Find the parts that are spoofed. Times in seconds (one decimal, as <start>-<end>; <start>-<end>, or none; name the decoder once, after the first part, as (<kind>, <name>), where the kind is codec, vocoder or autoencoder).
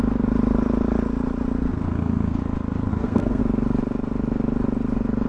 1.7-2.4 (codec, SNAC); 2.9-3.4